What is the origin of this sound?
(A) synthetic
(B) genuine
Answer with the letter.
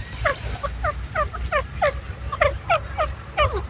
B